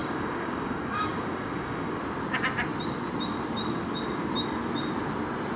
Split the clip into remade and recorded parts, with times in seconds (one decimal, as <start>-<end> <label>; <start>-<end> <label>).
0.0-2.0 remade; 2.0-5.6 recorded